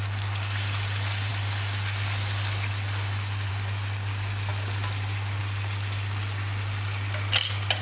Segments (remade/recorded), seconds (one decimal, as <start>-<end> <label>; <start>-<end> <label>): 0.0-7.8 recorded

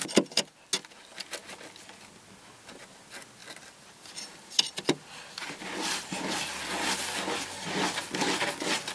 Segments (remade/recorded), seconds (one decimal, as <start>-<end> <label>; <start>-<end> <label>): 0.0-3.4 recorded; 3.4-7.2 remade; 7.2-8.9 recorded

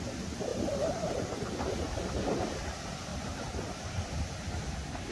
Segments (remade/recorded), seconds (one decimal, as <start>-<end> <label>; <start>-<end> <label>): 0.0-0.5 recorded; 0.5-1.1 remade; 1.1-3.1 recorded; 3.1-4.5 remade; 4.5-5.1 recorded